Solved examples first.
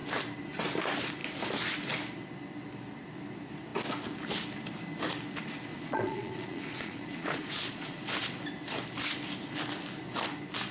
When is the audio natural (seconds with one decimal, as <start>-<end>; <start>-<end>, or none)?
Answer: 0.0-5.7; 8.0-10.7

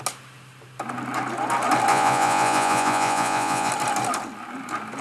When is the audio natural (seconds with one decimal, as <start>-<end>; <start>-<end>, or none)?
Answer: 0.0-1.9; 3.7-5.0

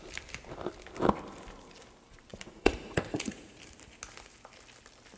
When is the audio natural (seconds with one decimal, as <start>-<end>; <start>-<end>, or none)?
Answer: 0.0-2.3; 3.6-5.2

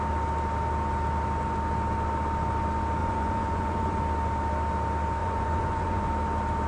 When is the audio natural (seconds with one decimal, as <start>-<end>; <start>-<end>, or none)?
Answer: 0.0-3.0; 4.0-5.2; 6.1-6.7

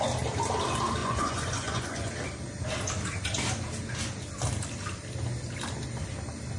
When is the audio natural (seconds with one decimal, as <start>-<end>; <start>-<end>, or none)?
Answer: 0.0-1.0; 2.1-6.6

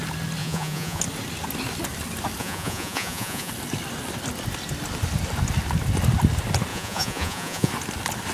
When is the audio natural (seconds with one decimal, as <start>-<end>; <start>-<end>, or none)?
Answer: 0.0-0.4; 1.0-2.4; 3.5-6.7; 7.7-8.3

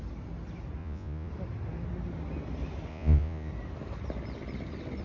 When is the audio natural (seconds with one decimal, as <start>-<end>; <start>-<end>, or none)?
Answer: 0.0-0.8; 1.3-2.9; 3.5-5.0

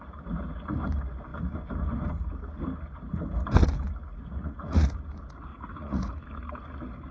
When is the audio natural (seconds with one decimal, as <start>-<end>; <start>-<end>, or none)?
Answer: 0.0-4.1; 4.9-5.5; 6.2-7.1